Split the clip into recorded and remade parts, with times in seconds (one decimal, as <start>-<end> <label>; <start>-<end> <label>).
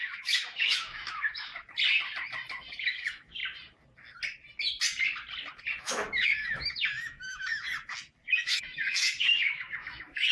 0.0-1.5 remade; 1.5-2.7 recorded; 2.7-3.4 remade; 3.4-5.8 recorded; 5.8-7.7 remade; 7.7-8.3 recorded; 8.3-10.3 remade